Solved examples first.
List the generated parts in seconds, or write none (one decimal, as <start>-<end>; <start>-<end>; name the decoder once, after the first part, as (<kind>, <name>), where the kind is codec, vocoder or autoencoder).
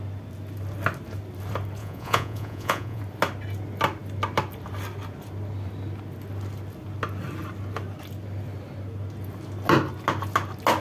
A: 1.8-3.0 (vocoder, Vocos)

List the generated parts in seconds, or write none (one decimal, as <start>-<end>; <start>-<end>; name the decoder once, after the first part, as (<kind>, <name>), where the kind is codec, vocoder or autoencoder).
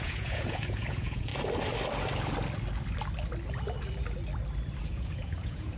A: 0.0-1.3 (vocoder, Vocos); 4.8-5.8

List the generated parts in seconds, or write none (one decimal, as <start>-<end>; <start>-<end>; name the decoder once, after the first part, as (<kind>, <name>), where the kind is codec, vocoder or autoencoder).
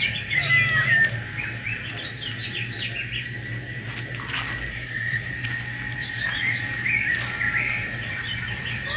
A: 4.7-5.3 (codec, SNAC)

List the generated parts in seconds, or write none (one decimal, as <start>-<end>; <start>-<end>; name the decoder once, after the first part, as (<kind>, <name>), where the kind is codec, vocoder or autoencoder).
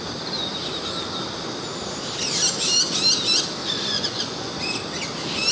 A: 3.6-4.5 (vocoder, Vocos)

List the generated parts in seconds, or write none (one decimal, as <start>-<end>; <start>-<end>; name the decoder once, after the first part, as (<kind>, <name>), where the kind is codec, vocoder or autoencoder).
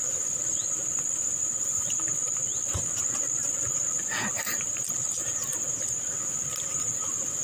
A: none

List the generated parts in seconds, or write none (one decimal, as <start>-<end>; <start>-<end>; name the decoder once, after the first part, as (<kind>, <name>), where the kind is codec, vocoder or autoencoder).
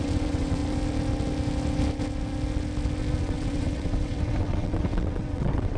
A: 0.0-0.6 (vocoder, WaveNeXt); 3.2-5.8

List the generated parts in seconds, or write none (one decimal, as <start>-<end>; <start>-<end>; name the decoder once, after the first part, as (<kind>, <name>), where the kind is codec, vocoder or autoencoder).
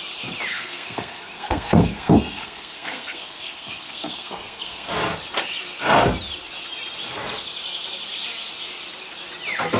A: 0.5-4.9 (codec, SNAC)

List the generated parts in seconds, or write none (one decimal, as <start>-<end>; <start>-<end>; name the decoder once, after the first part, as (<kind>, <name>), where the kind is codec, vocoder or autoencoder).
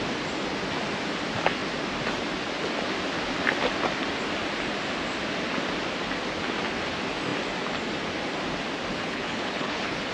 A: 8.9-10.1 (codec, HILCodec)